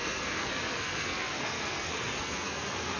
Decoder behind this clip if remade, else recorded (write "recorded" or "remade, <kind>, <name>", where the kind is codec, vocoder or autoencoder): remade, codec, SNAC